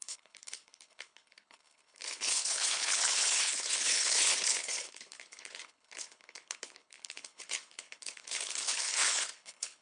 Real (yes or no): no